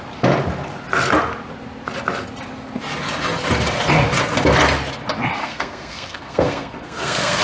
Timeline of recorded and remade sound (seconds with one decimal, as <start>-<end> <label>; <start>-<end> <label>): 0.0-5.4 recorded; 5.4-7.4 remade